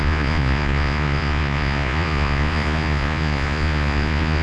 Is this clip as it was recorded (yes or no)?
no